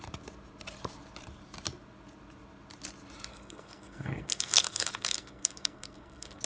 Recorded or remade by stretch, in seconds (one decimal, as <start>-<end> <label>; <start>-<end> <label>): 0.0-3.3 recorded; 3.3-6.4 remade